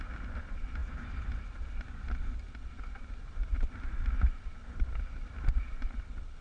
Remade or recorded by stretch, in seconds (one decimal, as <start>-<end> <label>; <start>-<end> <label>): 0.0-0.8 remade; 0.8-3.1 recorded; 3.1-6.4 remade